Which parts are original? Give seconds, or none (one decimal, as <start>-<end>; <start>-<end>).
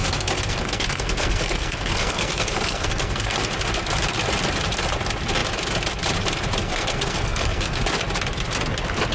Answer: 3.5-6.6; 7.8-9.1